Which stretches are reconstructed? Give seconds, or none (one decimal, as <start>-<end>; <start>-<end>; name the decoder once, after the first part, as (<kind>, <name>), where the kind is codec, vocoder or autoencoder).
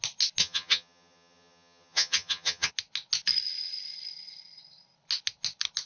0.4-2.7 (vocoder, HiFi-GAN)